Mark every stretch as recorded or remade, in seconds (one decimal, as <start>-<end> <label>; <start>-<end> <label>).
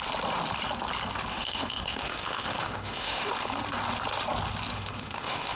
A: 0.0-1.3 recorded; 1.3-3.3 remade; 3.3-4.7 recorded; 4.7-5.6 remade